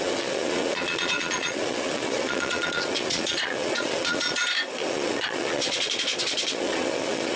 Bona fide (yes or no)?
no